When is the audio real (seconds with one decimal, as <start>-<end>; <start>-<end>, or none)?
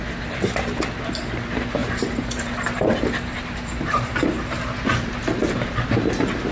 0.0-1.8; 4.8-6.5